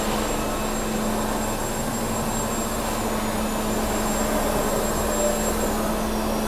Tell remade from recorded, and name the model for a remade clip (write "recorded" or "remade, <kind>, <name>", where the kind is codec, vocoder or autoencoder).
recorded